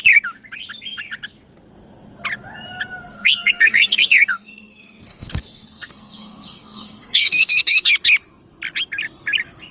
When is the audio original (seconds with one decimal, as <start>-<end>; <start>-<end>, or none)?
0.0-3.1; 7.9-9.7